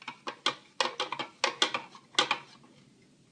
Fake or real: real